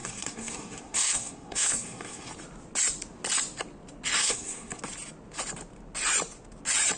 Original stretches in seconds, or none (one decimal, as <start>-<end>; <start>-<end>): 2.3-4.2; 4.8-7.0